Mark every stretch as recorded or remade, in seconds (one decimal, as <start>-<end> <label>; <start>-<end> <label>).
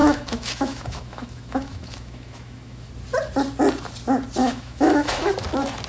0.0-2.9 remade; 2.9-4.4 recorded; 4.4-5.3 remade; 5.3-5.9 recorded